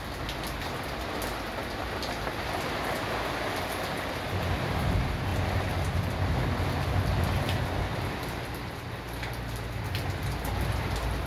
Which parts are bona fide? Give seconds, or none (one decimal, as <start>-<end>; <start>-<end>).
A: 0.0-11.3

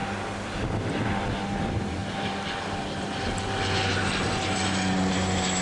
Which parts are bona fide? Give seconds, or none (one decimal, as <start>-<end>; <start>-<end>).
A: 0.0-5.6

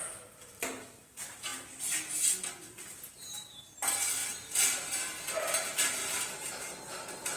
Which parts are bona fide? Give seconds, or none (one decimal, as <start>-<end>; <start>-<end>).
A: 0.0-1.5; 3.0-4.2; 4.8-7.4